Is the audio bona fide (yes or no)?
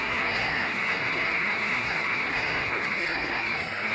no